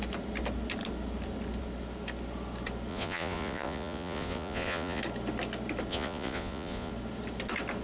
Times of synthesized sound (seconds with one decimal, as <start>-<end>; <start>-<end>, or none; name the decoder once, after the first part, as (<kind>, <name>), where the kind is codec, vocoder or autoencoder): 2.9-5.0 (vocoder, Vocos); 5.9-6.9

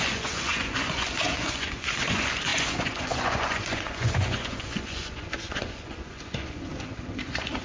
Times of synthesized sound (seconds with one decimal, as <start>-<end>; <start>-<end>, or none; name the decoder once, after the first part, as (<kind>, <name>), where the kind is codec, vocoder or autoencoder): 0.0-7.6 (vocoder, Vocos)